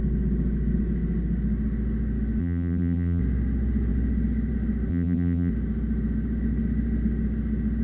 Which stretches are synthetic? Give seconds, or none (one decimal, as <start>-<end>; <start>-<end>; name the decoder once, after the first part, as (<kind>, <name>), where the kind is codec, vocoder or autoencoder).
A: 2.4-3.2 (vocoder, BigVGAN v2); 4.9-5.5